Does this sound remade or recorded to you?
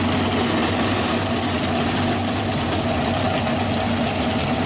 recorded